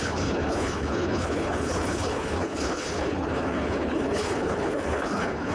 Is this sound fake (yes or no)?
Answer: yes